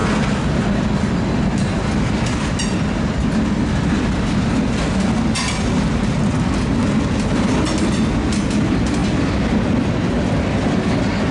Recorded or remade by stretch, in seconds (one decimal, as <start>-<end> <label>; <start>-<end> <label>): 0.0-11.3 recorded